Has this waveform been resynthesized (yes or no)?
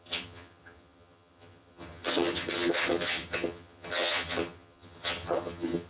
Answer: yes